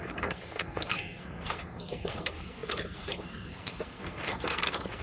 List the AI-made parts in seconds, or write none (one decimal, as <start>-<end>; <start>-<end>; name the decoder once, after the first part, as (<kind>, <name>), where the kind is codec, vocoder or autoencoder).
0.0-5.0 (codec, SNAC)